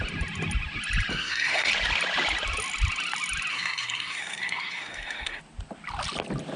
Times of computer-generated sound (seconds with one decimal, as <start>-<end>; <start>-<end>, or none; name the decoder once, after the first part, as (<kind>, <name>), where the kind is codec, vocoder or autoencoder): 1.1-1.7 (codec, SNAC); 3.5-5.4